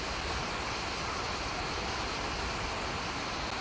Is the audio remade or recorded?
recorded